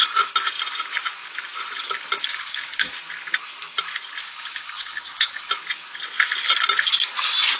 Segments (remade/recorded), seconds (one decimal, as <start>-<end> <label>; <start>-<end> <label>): 0.0-2.3 recorded; 2.3-2.9 remade; 2.9-4.2 recorded; 4.2-5.5 remade; 5.5-7.6 recorded